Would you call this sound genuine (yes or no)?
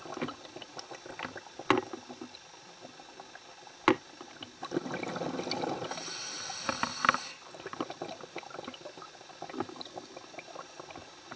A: yes